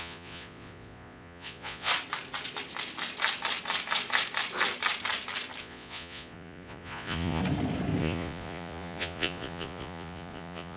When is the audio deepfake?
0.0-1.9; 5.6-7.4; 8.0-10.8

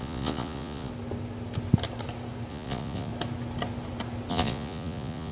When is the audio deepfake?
0.0-0.9; 2.5-3.1; 4.3-5.3

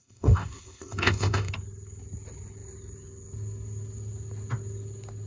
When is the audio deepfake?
0.0-1.5

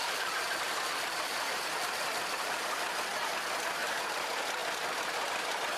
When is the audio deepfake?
0.0-3.1; 3.7-4.6; 5.3-5.8

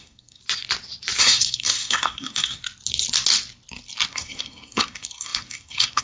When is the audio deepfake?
0.0-0.4; 1.2-2.6; 4.1-6.0

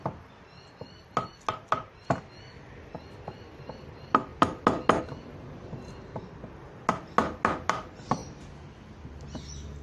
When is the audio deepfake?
none

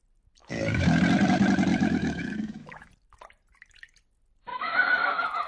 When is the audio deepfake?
0.4-1.0; 1.7-2.9; 4.5-5.5

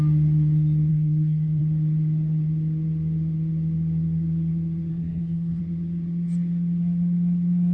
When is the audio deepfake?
0.9-1.6; 4.9-5.6